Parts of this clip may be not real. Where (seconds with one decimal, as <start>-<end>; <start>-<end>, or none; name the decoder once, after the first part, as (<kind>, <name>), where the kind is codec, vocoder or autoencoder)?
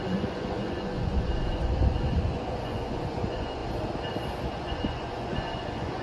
0.0-3.6 (vocoder, Vocos); 4.4-6.0